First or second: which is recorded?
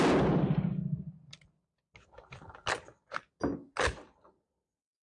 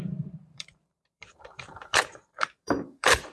first